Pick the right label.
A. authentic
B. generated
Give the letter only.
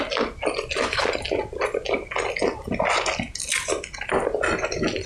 A